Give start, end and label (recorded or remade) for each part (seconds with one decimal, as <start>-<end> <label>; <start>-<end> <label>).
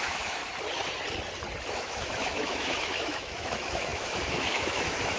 0.0-0.4 remade; 0.4-1.7 recorded; 1.7-5.2 remade